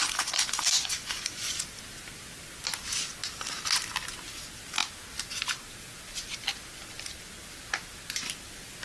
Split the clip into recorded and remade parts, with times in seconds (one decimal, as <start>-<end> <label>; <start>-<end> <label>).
0.0-1.7 remade; 1.7-8.8 recorded